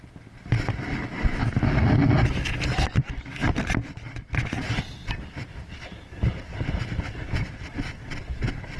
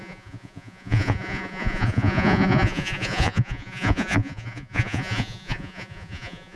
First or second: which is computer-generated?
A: second